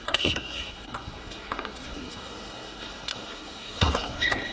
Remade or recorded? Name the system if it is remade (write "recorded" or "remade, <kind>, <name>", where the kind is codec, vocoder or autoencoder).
remade, codec, SNAC